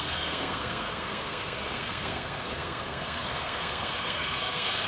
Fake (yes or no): yes